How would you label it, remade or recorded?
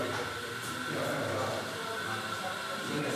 recorded